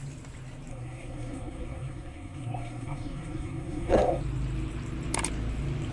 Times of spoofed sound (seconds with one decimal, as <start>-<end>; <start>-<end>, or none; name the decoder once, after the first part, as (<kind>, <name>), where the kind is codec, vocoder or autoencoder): 0.7-4.2 (codec, SNAC)